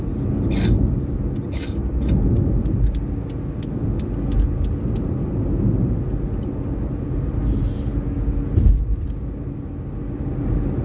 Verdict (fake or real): real